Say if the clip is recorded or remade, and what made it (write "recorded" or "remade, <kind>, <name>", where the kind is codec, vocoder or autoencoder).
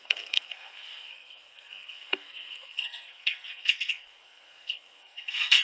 remade, codec, SNAC